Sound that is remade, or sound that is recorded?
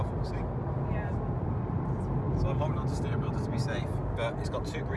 recorded